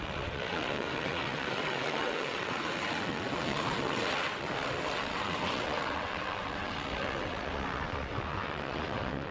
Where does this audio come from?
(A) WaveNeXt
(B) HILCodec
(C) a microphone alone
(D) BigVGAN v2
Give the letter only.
A